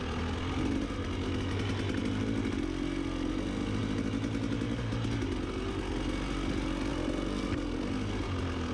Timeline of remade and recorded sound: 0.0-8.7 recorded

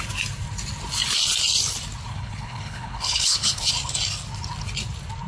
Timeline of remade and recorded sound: 0.0-2.1 recorded; 2.1-3.7 remade; 3.7-5.3 recorded

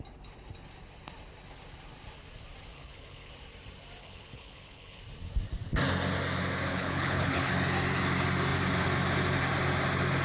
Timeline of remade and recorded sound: 0.0-2.7 recorded; 2.7-3.3 remade; 3.3-4.0 recorded; 4.0-5.0 remade; 5.0-6.7 recorded; 6.7-7.5 remade; 7.5-10.2 recorded

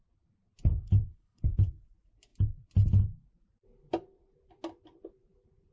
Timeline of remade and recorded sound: 0.0-0.7 recorded; 0.7-1.4 remade; 1.4-5.7 recorded

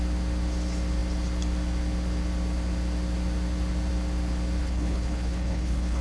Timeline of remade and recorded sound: 0.0-4.6 recorded; 4.6-6.0 remade

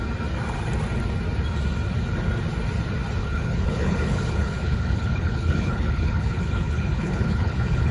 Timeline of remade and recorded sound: 0.0-3.2 recorded; 3.2-7.9 remade